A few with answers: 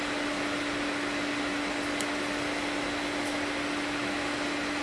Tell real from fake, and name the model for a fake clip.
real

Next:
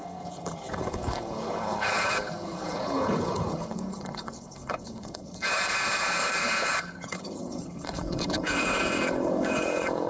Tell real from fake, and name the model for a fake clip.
fake, codec, HILCodec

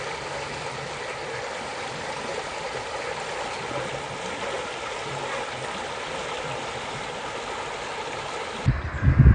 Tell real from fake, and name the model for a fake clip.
real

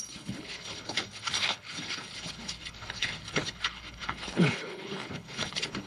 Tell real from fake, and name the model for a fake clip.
fake, codec, HILCodec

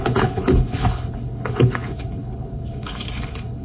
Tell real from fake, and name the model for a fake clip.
fake, codec, HILCodec